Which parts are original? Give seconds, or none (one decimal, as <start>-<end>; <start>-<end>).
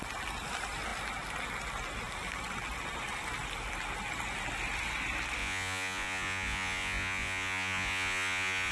0.0-5.4